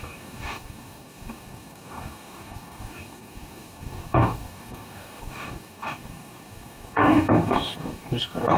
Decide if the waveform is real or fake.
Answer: fake